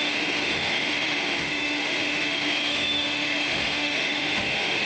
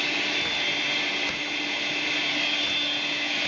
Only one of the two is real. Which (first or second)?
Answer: second